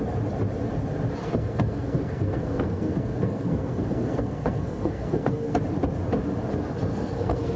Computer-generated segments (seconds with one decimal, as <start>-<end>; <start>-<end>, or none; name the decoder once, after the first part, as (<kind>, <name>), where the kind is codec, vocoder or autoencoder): 1.2-5.6 (codec, SNAC); 6.9-7.6